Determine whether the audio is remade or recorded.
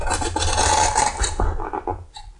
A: remade